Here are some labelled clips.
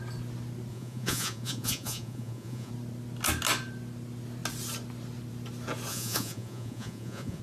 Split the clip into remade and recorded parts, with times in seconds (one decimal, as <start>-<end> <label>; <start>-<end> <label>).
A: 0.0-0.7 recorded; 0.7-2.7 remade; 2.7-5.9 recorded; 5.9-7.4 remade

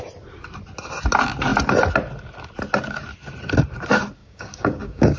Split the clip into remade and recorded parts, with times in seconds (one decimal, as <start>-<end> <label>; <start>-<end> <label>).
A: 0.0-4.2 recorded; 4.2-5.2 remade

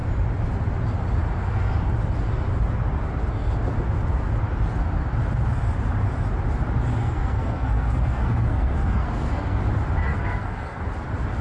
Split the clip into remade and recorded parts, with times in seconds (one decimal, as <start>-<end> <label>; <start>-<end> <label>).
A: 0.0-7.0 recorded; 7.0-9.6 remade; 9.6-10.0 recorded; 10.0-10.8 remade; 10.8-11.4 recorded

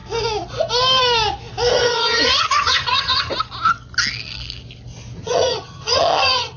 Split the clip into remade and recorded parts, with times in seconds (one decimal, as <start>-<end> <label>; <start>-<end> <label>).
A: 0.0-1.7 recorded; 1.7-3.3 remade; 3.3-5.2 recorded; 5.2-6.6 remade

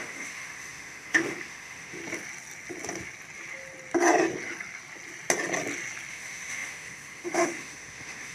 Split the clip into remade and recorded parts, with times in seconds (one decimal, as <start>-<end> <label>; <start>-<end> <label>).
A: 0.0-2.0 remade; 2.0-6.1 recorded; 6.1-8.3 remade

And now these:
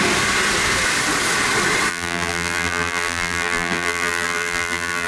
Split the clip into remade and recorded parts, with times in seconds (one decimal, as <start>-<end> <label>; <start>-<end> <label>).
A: 0.0-1.9 recorded; 1.9-5.1 remade

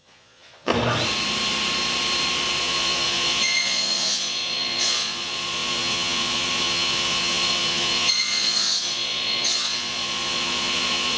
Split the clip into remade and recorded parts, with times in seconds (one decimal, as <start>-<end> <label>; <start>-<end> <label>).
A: 0.0-0.7 remade; 0.7-2.6 recorded; 2.6-11.2 remade